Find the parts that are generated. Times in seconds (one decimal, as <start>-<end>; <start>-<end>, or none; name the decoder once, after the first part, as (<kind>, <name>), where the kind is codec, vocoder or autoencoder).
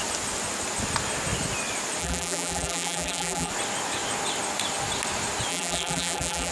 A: 2.0-3.5 (vocoder, BigVGAN v2); 5.5-6.5